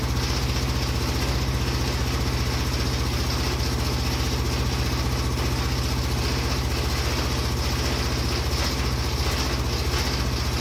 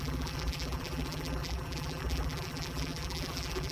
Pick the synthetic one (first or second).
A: second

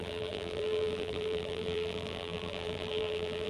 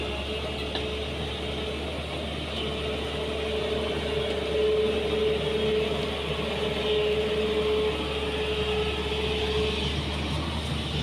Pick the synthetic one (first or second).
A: first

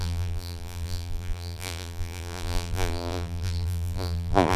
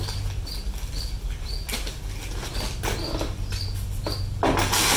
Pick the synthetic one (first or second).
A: first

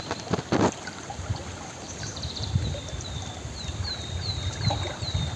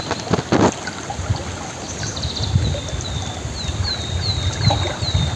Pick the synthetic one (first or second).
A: first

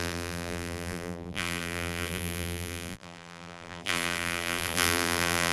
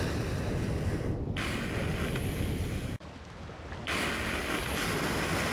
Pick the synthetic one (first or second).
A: first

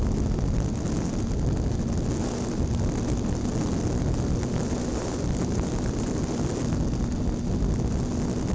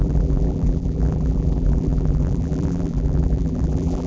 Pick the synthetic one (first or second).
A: second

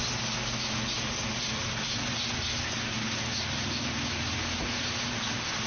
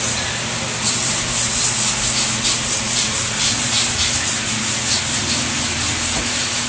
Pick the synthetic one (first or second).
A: second